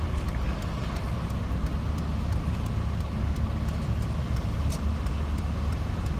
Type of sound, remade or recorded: recorded